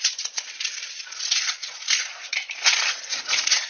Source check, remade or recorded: remade